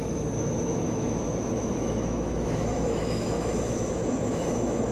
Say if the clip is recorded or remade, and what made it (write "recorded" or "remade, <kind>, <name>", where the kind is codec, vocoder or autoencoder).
remade, autoencoder, DAC-VAE